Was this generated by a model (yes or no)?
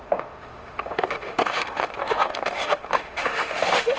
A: yes